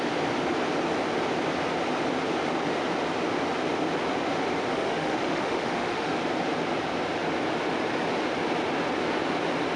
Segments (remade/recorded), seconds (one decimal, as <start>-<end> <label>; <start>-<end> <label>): 0.0-4.7 recorded; 4.7-6.2 remade; 6.2-9.8 recorded